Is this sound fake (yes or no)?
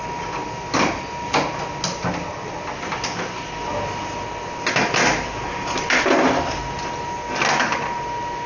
no